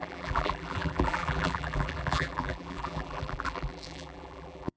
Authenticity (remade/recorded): remade